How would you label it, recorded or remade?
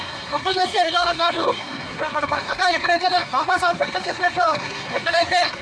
remade